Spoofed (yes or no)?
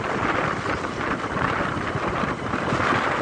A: no